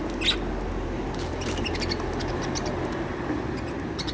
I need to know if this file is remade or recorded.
recorded